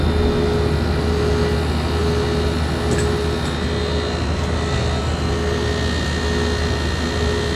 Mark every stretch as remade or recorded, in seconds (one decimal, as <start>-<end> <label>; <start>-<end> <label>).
0.0-7.6 recorded

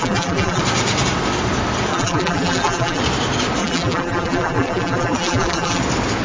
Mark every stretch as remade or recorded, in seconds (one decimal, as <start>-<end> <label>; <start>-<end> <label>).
0.0-0.6 remade; 0.6-1.9 recorded; 1.9-3.0 remade; 3.0-3.6 recorded; 3.6-5.8 remade; 5.8-6.2 recorded

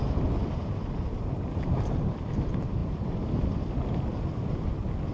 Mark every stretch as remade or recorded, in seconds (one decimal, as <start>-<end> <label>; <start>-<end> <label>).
0.0-2.8 recorded; 2.8-3.7 remade; 3.7-5.1 recorded

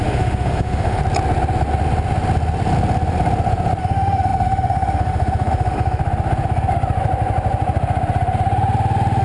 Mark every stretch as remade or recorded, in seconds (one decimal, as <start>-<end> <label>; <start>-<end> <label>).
0.0-1.0 remade; 1.0-3.8 recorded; 3.8-6.0 remade; 6.0-9.2 recorded

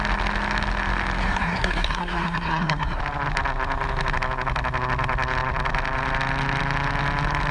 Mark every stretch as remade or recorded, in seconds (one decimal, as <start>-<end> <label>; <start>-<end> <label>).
0.0-1.2 recorded; 1.2-3.0 remade; 3.0-7.5 recorded